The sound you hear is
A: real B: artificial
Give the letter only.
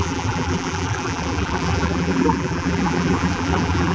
B